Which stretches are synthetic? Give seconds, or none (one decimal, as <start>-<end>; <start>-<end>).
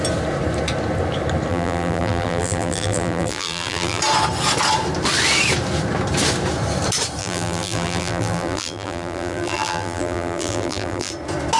1.5-4.0; 7.2-11.1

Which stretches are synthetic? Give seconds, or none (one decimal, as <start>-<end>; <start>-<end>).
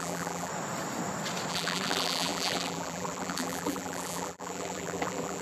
0.0-0.5; 1.5-5.4